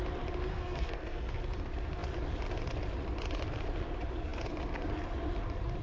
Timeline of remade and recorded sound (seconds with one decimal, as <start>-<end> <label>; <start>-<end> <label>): 0.0-0.5 recorded; 0.5-1.4 remade; 1.4-5.8 recorded